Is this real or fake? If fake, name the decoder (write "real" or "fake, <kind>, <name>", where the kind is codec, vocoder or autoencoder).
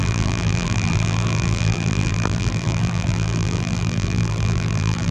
fake, vocoder, BigVGAN v2